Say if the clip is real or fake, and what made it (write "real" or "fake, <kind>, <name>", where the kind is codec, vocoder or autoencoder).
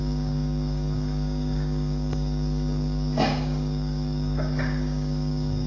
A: fake, codec, DAC